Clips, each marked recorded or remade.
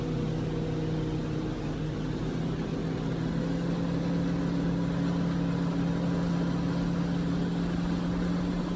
recorded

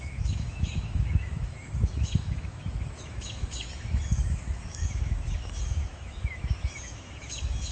remade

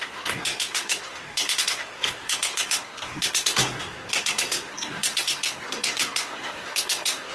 remade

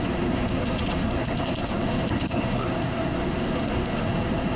remade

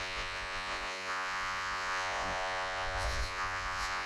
remade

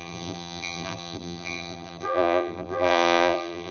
remade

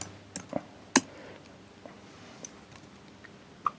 recorded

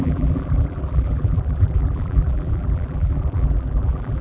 remade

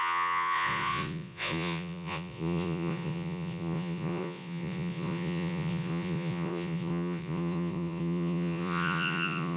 remade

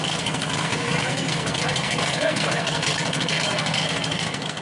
remade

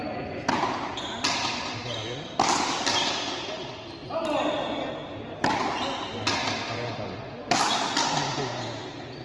recorded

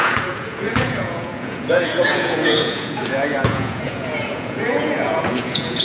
remade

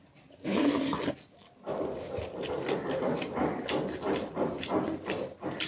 recorded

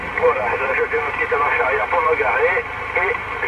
recorded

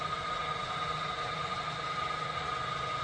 recorded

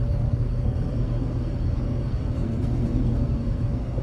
remade